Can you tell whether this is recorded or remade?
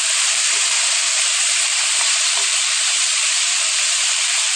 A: remade